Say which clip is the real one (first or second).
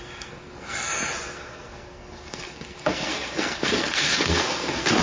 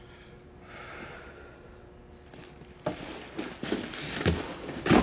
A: second